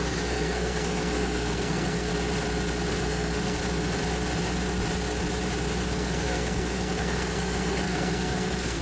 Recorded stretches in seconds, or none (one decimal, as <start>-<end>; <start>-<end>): 2.1-3.0; 3.6-5.9